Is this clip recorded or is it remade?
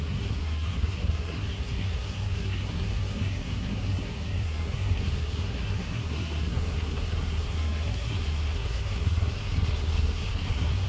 remade